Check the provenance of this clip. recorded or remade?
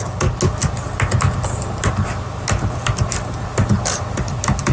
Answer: recorded